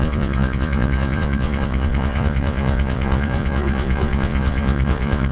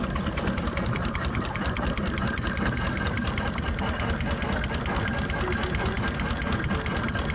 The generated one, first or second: first